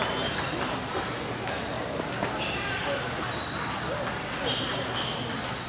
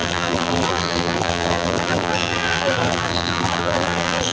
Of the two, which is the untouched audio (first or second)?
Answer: first